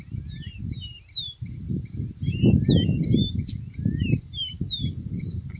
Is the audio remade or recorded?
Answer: remade